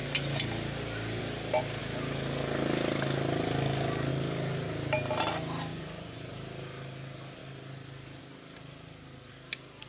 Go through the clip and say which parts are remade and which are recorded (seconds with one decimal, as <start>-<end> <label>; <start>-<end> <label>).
0.0-5.7 recorded; 5.7-6.3 remade; 6.3-9.9 recorded